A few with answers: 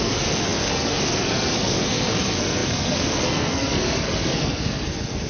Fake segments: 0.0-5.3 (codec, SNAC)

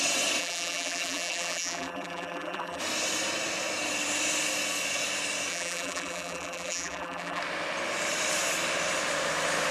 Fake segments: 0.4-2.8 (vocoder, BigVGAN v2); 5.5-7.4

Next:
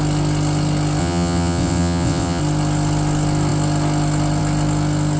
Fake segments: 1.0-2.4 (vocoder, WaveNeXt)